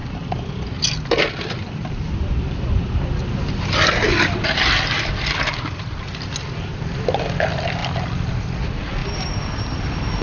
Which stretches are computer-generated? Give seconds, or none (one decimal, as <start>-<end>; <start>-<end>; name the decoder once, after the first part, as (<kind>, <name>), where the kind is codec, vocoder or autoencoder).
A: none